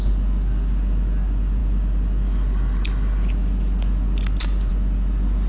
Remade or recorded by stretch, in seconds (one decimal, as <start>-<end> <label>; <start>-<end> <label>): 0.0-5.5 recorded